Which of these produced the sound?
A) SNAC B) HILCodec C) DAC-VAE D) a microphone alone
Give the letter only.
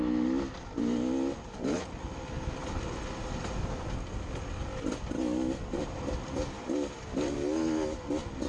D